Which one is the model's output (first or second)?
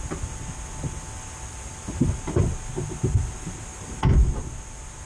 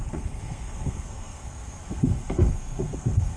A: second